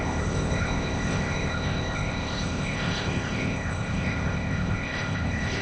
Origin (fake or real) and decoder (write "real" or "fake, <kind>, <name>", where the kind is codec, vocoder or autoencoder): fake, codec, ZipCodec